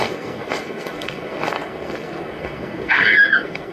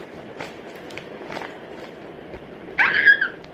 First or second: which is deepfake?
first